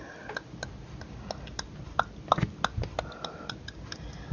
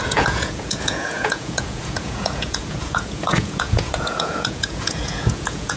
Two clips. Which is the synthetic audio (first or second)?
second